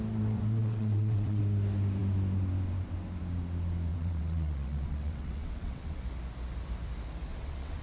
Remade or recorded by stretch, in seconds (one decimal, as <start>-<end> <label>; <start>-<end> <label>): 0.0-0.6 recorded; 0.6-1.4 remade; 1.4-3.9 recorded; 3.9-6.0 remade; 6.0-7.3 recorded; 7.3-7.8 remade